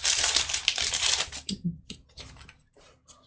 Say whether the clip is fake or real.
fake